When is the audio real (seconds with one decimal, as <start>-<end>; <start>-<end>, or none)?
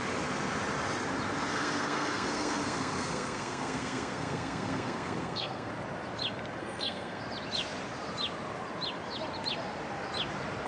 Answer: 0.0-1.5; 5.7-6.6; 7.2-10.7